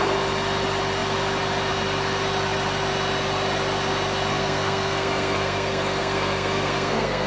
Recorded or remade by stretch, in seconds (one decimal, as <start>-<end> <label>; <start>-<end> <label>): 0.0-4.3 recorded; 4.3-7.3 remade